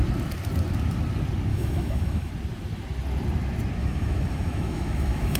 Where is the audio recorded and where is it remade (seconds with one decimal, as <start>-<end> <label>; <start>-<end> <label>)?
0.0-1.5 recorded; 1.5-2.3 remade; 2.3-3.8 recorded; 3.8-5.4 remade